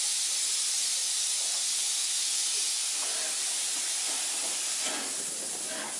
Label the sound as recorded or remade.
recorded